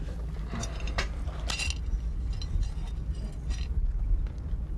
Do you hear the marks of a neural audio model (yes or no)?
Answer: no